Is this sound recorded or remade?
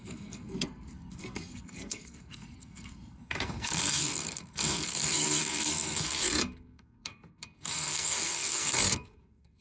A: remade